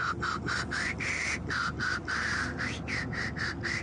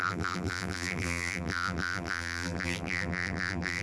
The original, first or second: first